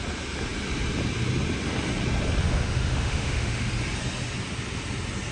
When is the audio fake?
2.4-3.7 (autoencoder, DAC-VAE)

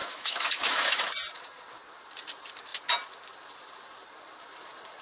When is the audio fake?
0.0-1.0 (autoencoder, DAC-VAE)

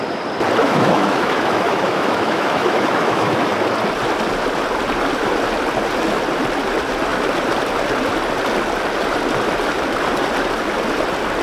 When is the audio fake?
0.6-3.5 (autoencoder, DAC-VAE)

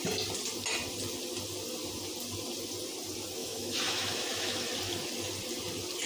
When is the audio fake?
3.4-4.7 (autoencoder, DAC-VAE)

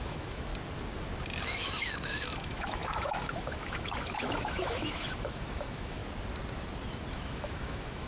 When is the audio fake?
0.0-0.5 (autoencoder, DAC-VAE); 1.4-6.0; 7.1-8.1

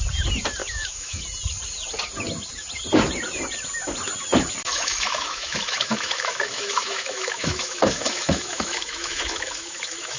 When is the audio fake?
0.6-1.2 (autoencoder, DAC-VAE); 4.6-10.2

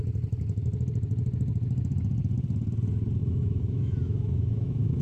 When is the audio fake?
3.2-5.0 (autoencoder, DAC-VAE)

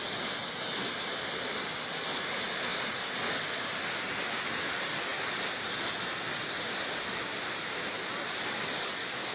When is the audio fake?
none